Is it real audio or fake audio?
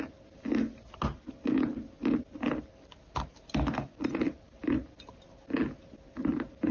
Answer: real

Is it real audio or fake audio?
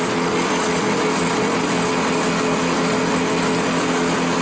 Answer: real